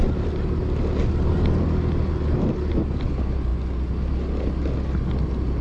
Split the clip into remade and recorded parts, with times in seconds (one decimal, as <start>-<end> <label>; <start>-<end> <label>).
0.0-5.6 recorded